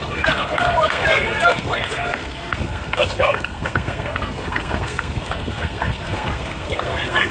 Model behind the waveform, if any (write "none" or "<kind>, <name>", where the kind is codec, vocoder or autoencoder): codec, SNAC